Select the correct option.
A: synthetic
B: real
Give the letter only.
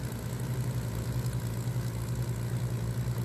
B